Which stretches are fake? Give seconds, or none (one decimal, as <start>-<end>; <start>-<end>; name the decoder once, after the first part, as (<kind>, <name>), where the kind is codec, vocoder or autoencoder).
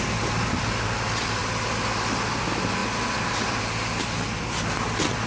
none